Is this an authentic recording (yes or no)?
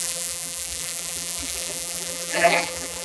no